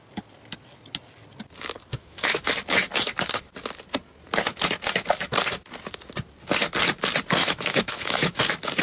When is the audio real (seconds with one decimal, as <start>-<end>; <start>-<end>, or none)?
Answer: 0.0-1.9; 2.5-7.4; 8.4-8.8